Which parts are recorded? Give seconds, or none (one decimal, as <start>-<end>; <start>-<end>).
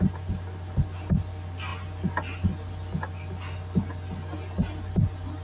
0.0-5.4